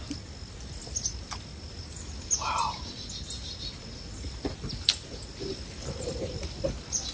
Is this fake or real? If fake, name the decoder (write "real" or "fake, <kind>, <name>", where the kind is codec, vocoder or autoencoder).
real